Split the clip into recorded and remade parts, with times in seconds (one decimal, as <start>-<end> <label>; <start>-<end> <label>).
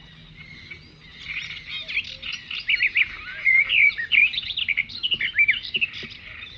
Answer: 0.0-3.3 recorded; 3.3-4.2 remade; 4.2-6.6 recorded